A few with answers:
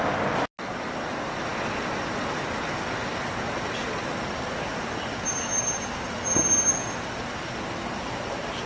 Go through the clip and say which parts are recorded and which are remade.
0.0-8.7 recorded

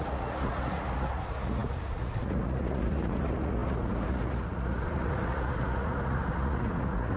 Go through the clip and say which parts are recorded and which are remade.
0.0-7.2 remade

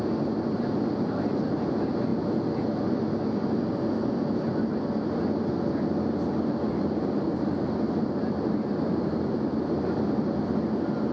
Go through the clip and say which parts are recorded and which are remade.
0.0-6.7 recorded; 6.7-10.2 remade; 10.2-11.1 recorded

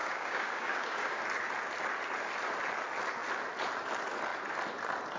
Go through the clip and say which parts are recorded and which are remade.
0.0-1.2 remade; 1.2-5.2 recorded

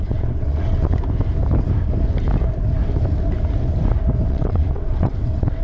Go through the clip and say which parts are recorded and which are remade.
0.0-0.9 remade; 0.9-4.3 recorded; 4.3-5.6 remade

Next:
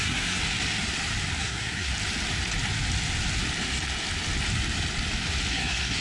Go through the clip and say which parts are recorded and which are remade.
0.0-0.4 remade; 0.4-1.4 recorded; 1.4-1.9 remade; 1.9-5.5 recorded; 5.5-6.0 remade

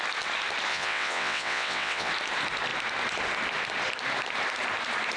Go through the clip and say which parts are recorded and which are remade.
0.0-0.7 recorded; 0.7-2.1 remade; 2.1-5.2 recorded